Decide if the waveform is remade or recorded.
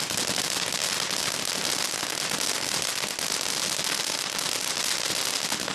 recorded